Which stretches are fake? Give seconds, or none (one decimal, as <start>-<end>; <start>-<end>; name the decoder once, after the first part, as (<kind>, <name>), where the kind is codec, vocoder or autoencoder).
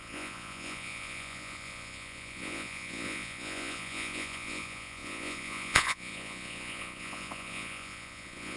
0.0-8.6 (vocoder, Vocos)